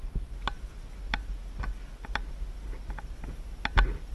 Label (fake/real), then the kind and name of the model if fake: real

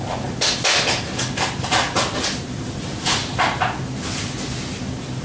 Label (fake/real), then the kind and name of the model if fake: real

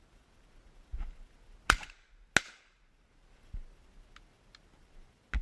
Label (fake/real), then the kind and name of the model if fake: real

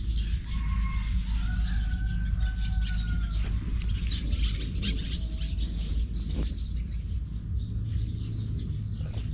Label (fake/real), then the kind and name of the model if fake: real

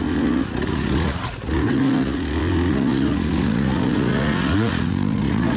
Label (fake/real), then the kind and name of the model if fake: fake, vocoder, Vocos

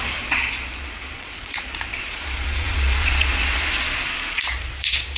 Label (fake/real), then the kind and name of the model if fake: fake, vocoder, Vocos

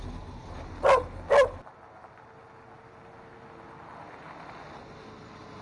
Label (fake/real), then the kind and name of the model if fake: real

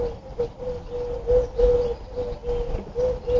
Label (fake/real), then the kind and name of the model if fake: real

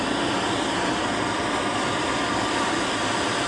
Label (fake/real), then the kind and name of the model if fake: real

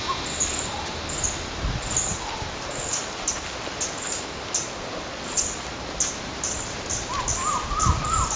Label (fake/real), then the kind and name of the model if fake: real